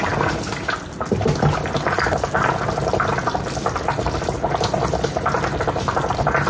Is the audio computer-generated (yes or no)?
no